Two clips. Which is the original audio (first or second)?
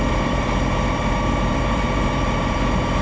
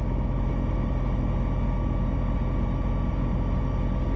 second